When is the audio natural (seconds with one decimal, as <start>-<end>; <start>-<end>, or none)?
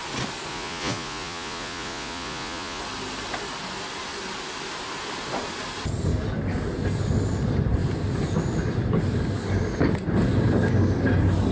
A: 0.0-0.5; 2.8-11.5